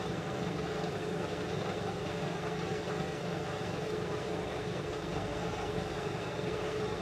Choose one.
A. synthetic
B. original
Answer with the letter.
A